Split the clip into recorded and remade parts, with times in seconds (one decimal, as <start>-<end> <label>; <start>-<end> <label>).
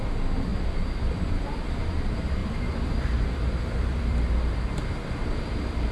0.0-5.9 remade